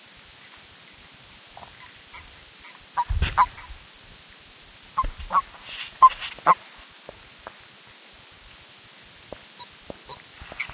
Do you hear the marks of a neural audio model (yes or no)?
no